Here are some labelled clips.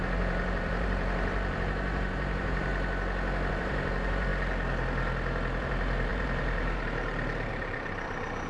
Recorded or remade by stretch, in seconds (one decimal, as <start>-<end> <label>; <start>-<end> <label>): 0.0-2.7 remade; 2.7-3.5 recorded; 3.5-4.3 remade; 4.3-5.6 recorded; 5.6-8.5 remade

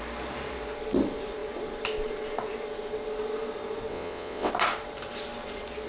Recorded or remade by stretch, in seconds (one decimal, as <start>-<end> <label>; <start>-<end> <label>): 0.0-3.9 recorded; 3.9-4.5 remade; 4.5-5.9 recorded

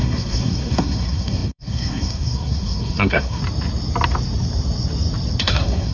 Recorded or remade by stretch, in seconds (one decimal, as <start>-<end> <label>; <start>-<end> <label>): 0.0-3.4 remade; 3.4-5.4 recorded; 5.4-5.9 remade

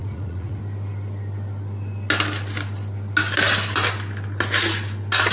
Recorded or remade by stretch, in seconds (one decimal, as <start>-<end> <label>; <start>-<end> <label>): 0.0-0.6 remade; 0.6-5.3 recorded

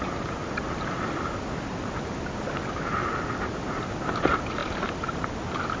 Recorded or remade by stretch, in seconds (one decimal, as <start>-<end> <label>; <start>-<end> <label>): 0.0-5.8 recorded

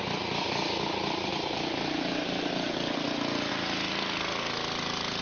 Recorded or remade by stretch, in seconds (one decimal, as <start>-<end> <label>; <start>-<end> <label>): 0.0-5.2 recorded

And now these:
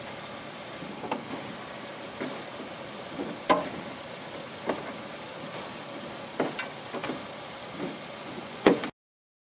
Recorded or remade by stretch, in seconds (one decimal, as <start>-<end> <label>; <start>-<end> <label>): 0.0-8.2 recorded; 8.2-8.8 remade; 8.8-9.5 recorded

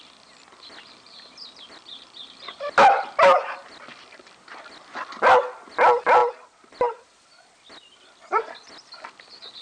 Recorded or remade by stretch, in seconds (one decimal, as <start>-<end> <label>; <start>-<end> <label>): 0.0-9.6 recorded